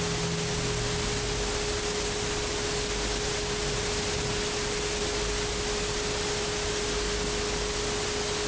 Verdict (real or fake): real